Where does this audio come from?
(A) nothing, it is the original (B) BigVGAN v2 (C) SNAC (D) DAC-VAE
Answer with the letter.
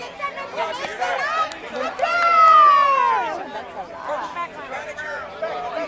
B